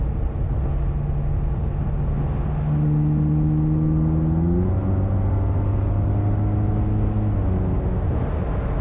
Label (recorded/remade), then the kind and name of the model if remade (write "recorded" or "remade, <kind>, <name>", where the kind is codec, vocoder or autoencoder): recorded